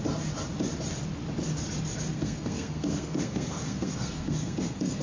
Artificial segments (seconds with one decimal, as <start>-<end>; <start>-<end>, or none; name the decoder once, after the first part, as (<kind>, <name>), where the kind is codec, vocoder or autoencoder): 2.1-5.0 (codec, SNAC)